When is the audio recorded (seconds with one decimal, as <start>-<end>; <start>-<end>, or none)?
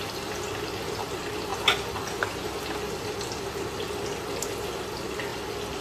0.0-5.8